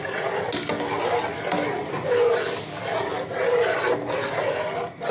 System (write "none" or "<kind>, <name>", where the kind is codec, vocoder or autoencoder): none